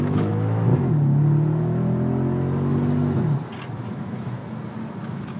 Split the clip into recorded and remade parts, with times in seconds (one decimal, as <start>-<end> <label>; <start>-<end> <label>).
0.0-0.7 remade; 0.7-3.9 recorded; 3.9-4.4 remade; 4.4-5.0 recorded; 5.0-5.4 remade